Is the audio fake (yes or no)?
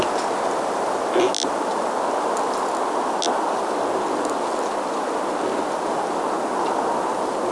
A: no